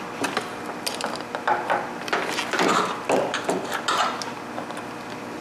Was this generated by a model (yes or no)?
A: no